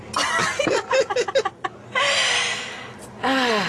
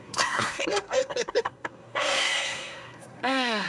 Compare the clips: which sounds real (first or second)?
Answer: first